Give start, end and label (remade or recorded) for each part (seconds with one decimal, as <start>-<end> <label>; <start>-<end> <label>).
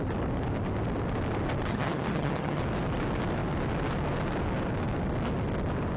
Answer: 0.0-1.7 recorded; 1.7-2.6 remade; 2.6-6.0 recorded